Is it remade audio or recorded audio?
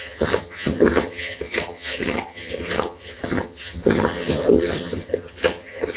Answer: remade